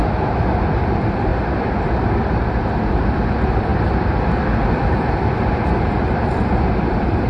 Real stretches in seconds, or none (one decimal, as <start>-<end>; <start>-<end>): 1.3-3.0; 3.7-4.4